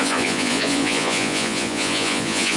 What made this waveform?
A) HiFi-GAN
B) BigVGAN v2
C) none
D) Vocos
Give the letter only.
D